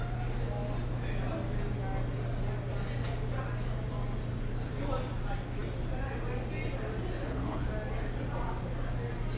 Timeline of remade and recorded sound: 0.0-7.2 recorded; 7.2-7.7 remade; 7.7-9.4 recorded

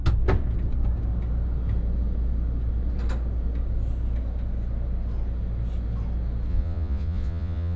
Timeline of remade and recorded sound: 0.0-6.5 recorded; 6.5-7.8 remade

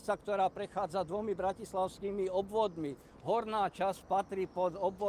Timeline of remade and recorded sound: 0.0-5.1 recorded